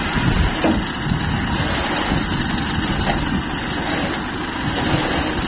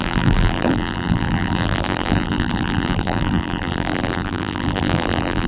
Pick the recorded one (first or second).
first